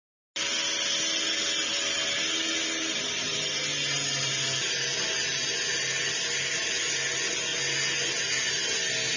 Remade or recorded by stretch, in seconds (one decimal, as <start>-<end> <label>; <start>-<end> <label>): 0.0-9.2 recorded